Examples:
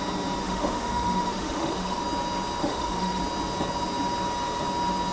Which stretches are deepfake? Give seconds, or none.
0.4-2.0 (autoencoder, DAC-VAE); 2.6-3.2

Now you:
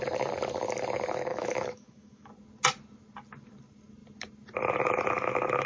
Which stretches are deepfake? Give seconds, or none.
1.3-2.3 (autoencoder, DAC-VAE)

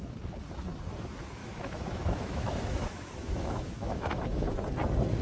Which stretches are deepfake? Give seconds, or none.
1.4-4.5 (autoencoder, DAC-VAE)

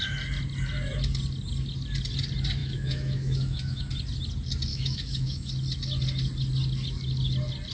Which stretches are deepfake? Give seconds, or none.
2.6-3.9 (autoencoder, DAC-VAE); 4.7-5.5

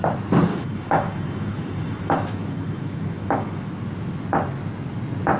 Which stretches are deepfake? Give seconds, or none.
0.5-3.7 (autoencoder, DAC-VAE)

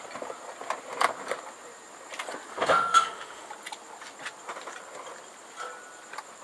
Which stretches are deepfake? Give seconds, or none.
2.5-3.5 (autoencoder, DAC-VAE)

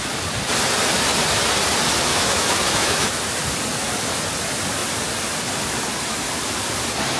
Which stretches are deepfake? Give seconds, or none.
2.1-3.2 (autoencoder, DAC-VAE)

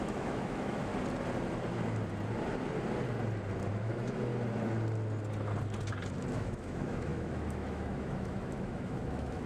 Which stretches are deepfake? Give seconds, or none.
0.0-0.9 (autoencoder, DAC-VAE); 3.7-4.3; 6.3-9.5